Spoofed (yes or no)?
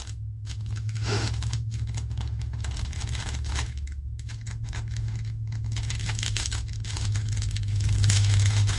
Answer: yes